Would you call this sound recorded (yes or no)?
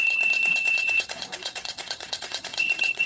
no